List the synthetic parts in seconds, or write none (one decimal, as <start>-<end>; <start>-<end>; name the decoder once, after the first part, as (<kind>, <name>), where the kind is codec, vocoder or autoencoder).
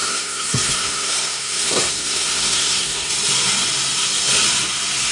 0.0-3.1 (codec, SNAC)